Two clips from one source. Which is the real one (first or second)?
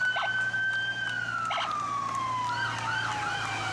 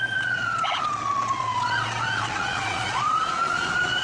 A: first